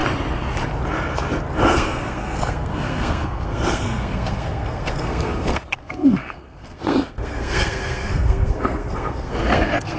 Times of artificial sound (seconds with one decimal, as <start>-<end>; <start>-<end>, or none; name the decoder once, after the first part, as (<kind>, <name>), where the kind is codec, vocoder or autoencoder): 1.6-10.0 (codec, SNAC)